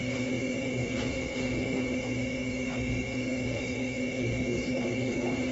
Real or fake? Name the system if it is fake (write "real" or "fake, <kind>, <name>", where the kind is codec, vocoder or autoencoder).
fake, autoencoder, DAC-VAE